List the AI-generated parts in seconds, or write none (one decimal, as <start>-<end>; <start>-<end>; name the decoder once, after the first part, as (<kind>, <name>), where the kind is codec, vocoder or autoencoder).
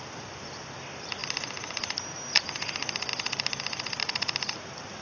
none